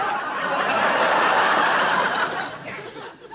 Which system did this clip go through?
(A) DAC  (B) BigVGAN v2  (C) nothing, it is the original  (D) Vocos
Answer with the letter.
B